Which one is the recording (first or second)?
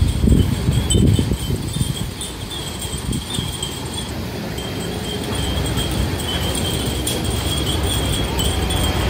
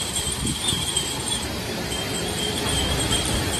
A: first